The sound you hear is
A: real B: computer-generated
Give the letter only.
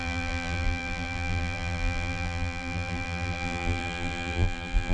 B